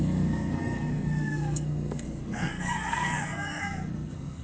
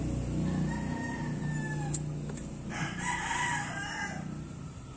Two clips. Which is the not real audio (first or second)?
first